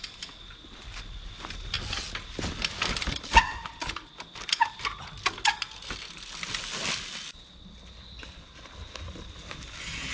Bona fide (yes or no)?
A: yes